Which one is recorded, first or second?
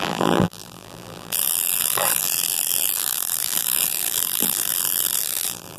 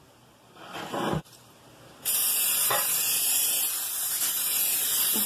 second